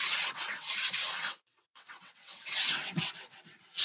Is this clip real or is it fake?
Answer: fake